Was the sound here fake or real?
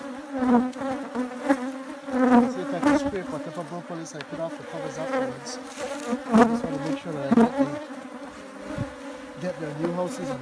real